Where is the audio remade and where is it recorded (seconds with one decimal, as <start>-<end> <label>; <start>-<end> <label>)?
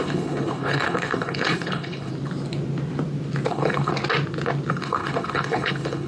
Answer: 0.0-2.1 remade; 2.1-3.5 recorded; 3.5-3.9 remade; 3.9-4.7 recorded; 4.7-6.1 remade